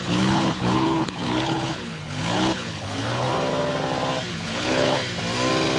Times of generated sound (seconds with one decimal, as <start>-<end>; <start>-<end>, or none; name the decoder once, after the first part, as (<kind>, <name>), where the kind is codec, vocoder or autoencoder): 0.0-3.3 (codec, HILCodec); 4.3-5.0